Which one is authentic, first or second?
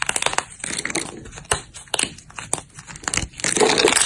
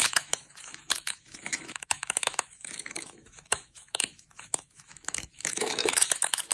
first